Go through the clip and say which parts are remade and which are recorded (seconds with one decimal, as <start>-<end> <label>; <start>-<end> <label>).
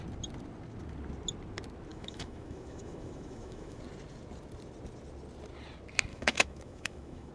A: 0.0-1.9 recorded; 1.9-3.8 remade; 3.8-6.1 recorded; 6.1-7.3 remade